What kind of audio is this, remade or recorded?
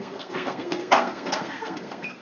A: remade